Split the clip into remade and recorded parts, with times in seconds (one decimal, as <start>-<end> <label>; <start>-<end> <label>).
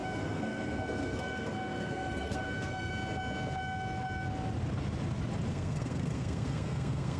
0.0-2.9 remade; 2.9-5.5 recorded; 5.5-7.2 remade